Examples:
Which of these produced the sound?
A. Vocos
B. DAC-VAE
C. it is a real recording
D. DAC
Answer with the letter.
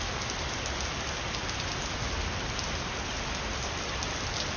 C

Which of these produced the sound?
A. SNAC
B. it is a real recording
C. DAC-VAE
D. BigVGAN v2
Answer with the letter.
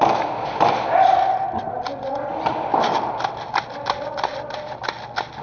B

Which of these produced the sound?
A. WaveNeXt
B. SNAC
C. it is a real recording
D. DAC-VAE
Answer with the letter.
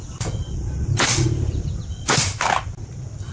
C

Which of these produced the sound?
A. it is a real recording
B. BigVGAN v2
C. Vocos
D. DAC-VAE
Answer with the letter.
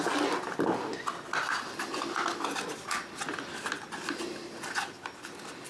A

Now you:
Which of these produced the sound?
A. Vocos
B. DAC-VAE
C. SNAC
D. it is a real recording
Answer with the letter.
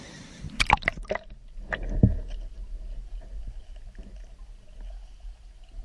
D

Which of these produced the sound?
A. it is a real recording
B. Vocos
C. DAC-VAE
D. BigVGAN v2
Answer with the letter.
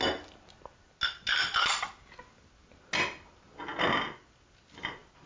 A